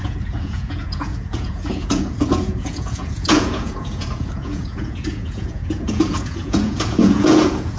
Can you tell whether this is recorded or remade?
remade